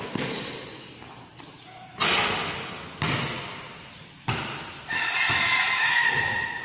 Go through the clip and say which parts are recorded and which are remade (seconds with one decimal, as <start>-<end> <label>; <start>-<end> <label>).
0.0-6.6 recorded